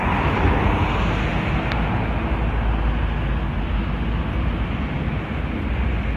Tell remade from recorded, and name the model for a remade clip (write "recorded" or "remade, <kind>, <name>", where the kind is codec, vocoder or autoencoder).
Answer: recorded